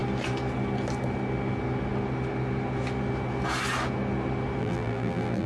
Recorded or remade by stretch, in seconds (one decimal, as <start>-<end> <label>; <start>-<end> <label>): 0.0-4.6 recorded; 4.6-5.5 remade